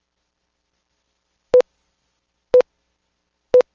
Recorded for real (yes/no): yes